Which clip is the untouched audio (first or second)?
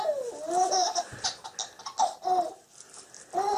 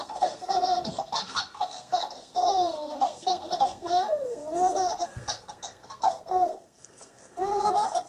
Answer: first